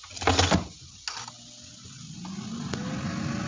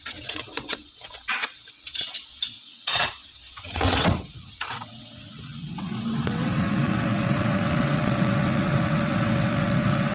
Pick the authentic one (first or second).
first